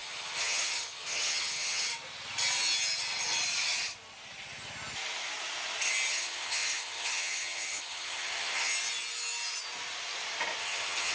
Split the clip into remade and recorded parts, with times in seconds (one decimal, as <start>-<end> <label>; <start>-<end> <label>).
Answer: 0.0-1.9 remade; 1.9-6.1 recorded; 6.1-8.7 remade; 8.7-10.6 recorded; 10.6-11.1 remade